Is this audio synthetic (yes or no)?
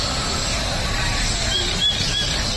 no